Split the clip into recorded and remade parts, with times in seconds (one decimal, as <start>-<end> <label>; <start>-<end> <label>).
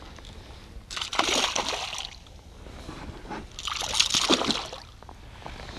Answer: 0.0-5.8 recorded